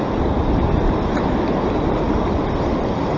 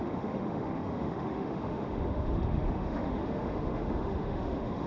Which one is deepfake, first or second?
second